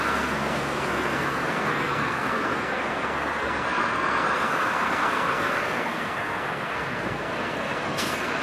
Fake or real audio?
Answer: fake